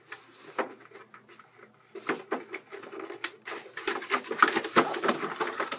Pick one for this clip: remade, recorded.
recorded